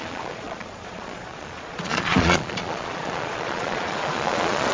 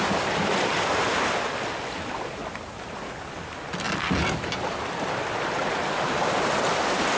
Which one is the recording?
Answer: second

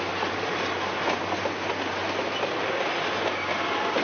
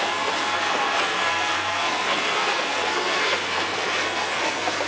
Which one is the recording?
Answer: first